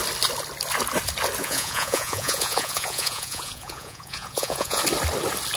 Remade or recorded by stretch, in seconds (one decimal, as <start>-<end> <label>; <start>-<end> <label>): 0.0-1.4 recorded; 1.4-4.8 remade; 4.8-5.6 recorded